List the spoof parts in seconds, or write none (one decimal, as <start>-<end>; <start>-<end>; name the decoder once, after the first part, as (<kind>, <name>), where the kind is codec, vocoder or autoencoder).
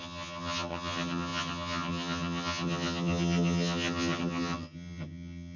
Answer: 0.0-5.6 (vocoder, HiFi-GAN)